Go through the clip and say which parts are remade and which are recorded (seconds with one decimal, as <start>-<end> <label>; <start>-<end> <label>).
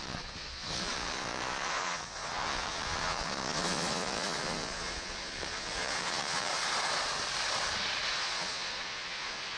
0.0-6.5 remade; 6.5-8.2 recorded; 8.2-9.6 remade